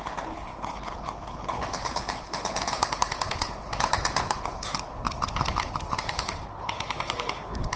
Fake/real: fake